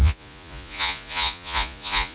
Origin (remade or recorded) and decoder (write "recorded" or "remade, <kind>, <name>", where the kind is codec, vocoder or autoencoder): remade, vocoder, Vocos